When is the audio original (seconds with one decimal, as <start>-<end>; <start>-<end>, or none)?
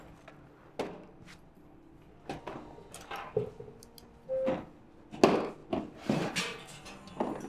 0.0-7.5